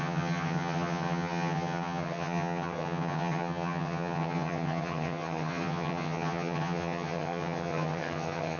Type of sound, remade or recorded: remade